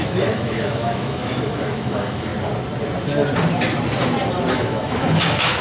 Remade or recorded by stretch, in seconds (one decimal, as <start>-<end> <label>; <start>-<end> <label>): 0.0-2.3 remade; 2.3-4.5 recorded; 4.5-5.6 remade